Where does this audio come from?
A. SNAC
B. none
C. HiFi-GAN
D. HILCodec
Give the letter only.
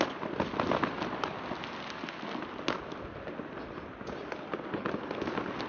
B